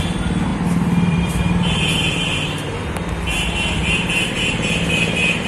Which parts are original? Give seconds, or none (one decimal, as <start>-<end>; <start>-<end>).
0.0-0.5; 1.3-3.8; 5.0-5.5